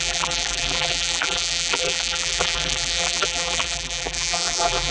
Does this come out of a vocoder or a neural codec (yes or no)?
yes